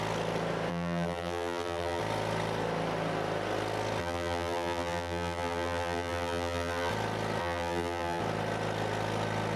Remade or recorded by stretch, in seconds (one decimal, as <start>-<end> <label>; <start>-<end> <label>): 0.0-0.7 recorded; 0.7-2.0 remade; 2.0-4.0 recorded; 4.0-6.9 remade; 6.9-7.4 recorded; 7.4-8.2 remade; 8.2-9.6 recorded